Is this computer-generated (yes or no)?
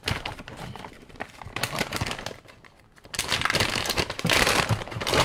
yes